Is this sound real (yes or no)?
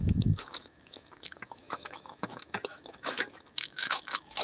no